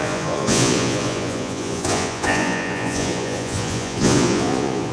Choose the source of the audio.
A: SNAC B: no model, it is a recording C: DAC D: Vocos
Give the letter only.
D